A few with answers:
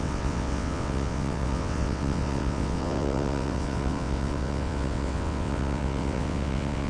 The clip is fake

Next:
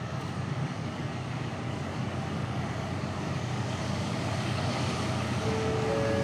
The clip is fake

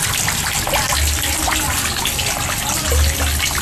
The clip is real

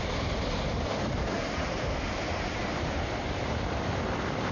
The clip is fake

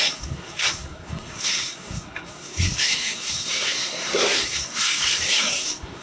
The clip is fake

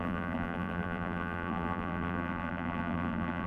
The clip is fake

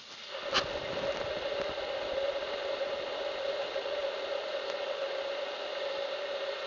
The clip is real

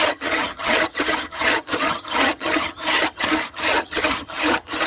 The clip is fake